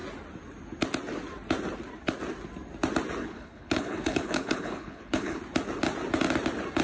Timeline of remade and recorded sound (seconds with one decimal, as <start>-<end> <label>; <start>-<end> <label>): 0.0-3.2 recorded; 3.2-5.4 remade; 5.4-6.8 recorded